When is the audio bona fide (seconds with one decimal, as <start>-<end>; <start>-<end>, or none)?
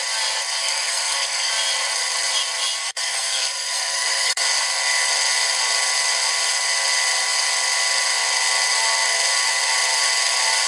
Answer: 0.0-0.6; 1.5-2.8; 4.4-10.7